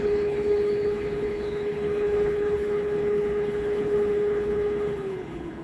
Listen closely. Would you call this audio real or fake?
fake